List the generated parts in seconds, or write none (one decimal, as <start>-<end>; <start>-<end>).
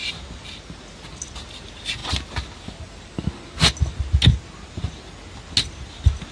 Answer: none